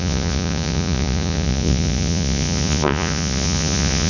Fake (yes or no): yes